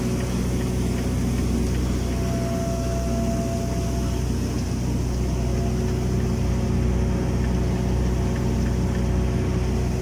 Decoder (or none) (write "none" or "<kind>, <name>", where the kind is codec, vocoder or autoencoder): none